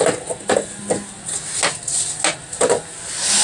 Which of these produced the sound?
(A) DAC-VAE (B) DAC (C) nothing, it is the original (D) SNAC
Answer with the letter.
C